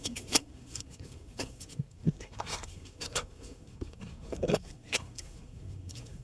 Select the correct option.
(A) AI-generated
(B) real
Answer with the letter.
A